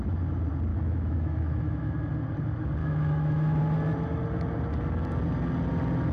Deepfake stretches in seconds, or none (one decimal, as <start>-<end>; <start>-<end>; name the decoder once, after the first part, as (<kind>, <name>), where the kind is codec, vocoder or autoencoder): 0.7-1.9 (autoencoder, DAC-VAE); 2.8-3.6